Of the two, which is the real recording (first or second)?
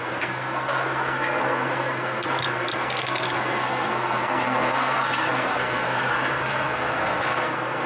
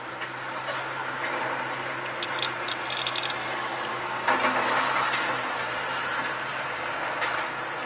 second